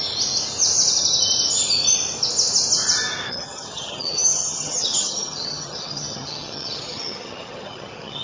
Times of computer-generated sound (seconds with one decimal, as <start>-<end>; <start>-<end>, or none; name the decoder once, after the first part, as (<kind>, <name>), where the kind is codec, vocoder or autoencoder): 3.3-8.2 (vocoder, HiFi-GAN)